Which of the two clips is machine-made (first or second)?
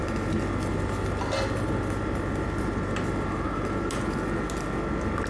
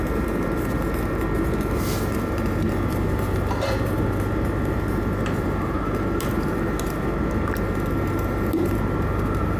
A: second